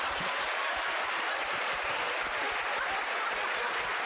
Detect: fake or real real